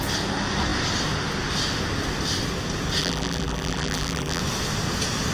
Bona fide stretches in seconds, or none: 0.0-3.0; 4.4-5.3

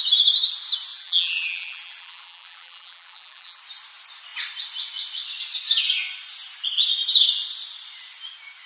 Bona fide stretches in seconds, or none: 0.0-0.9; 3.6-8.7